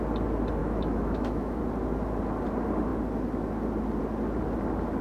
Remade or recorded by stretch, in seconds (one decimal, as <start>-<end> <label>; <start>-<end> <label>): 0.0-0.6 recorded; 0.6-1.6 remade; 1.6-5.0 recorded